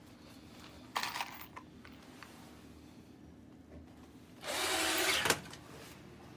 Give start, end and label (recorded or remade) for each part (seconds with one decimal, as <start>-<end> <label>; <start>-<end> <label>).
0.0-6.4 recorded